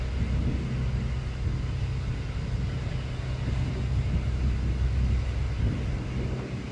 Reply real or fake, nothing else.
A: real